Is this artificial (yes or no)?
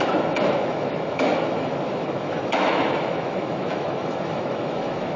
yes